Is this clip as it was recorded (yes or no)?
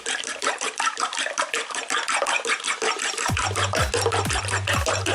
yes